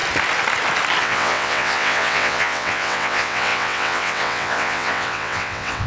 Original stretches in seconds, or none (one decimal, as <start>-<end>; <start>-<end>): 0.0-1.0